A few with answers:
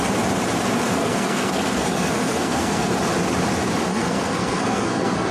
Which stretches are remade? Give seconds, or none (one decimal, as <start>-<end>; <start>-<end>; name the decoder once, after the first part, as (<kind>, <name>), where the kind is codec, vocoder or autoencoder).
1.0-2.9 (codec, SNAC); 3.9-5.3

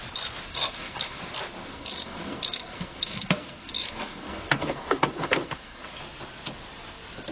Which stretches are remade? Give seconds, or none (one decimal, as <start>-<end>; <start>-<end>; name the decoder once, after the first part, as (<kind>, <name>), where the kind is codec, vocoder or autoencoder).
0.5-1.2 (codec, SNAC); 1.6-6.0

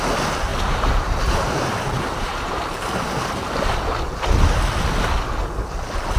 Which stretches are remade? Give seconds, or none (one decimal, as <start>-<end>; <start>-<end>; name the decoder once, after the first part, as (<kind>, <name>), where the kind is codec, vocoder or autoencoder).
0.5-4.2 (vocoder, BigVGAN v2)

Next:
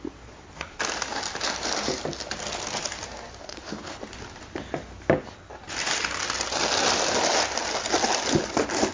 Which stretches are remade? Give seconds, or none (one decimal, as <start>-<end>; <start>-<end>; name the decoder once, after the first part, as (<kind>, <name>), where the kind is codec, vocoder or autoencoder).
3.4-4.0 (codec, HILCodec)

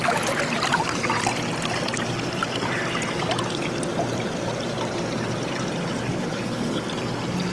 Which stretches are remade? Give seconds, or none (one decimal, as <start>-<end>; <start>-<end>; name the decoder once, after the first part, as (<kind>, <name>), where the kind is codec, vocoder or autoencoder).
6.1-6.8 (codec, HILCodec)

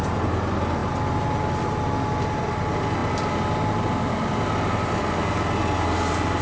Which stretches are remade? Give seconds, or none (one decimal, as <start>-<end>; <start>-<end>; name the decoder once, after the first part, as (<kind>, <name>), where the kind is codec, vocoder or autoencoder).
none